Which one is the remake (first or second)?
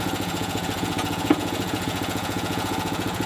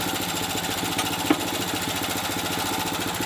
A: first